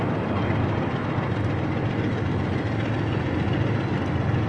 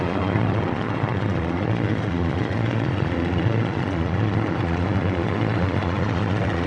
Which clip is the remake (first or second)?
second